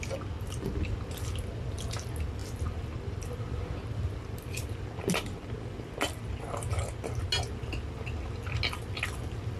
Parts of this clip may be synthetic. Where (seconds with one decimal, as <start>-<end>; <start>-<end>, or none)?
2.4-4.2